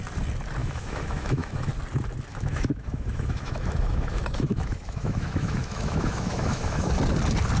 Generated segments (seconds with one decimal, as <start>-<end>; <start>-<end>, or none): 0.6-1.7; 2.3-6.9